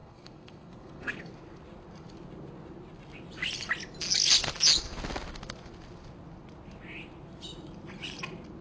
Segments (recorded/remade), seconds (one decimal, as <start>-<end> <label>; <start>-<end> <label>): 0.0-1.3 remade; 1.3-8.6 recorded